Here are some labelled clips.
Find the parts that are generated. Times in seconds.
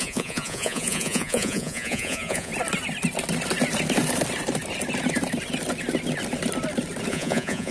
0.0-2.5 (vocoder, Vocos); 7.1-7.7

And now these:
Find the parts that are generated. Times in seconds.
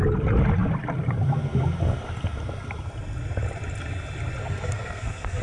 4.4-5.4 (codec, SNAC)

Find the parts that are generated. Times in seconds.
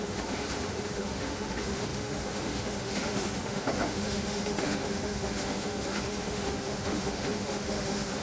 0.0-8.2 (autoencoder, DAC-VAE)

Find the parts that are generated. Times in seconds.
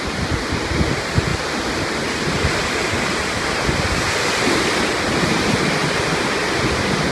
none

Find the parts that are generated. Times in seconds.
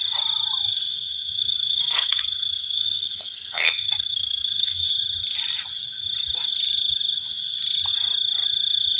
0.9-4.9 (codec, SNAC)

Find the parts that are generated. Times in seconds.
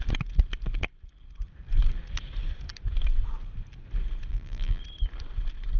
4.3-4.8 (vocoder, BigVGAN v2)